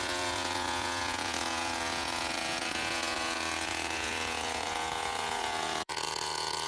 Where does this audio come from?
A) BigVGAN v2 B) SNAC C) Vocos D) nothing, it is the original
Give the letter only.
C